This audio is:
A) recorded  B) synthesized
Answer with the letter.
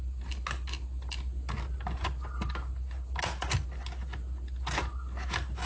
A